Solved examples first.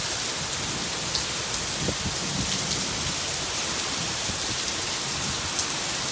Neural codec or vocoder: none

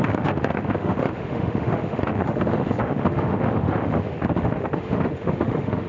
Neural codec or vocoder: autoencoder, DAC-VAE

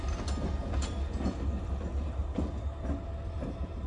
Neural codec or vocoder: none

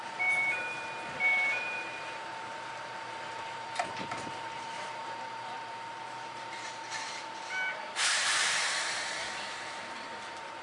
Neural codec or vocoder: vocoder, BigVGAN v2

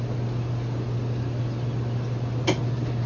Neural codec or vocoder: none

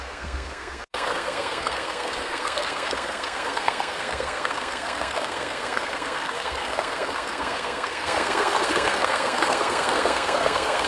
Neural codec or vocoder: codec, SNAC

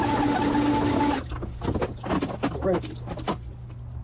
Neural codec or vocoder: none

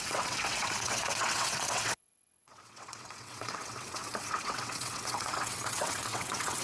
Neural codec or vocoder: vocoder, WaveNeXt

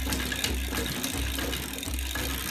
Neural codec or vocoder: none